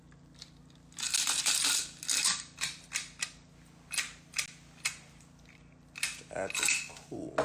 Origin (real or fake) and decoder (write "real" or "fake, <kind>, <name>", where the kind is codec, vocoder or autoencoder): real